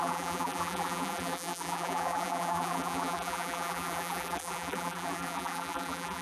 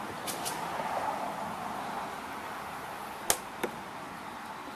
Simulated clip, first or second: first